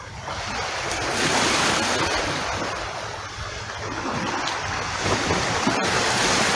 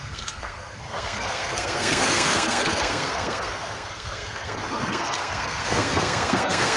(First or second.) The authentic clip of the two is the first